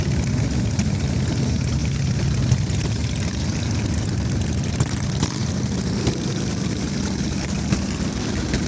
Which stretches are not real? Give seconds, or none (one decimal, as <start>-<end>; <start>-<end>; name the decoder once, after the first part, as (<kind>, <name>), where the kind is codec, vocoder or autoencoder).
none